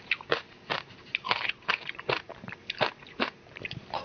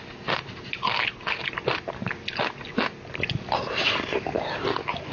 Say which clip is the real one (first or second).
second